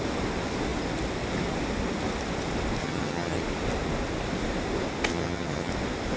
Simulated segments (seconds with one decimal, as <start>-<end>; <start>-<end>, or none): 2.8-3.4; 5.1-5.7